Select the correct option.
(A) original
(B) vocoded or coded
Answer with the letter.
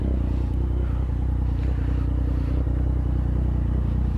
A